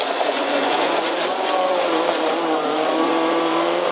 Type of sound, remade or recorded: remade